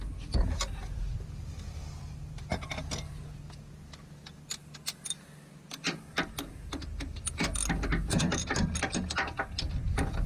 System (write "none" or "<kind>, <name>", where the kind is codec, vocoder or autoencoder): none